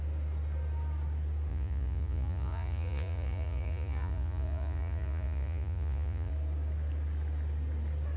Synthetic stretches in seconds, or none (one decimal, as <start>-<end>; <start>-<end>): 1.5-6.3